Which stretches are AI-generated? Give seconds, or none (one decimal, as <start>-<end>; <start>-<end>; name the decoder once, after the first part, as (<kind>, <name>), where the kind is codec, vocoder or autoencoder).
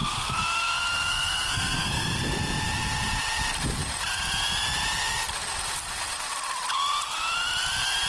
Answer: 0.0-2.2 (codec, SNAC)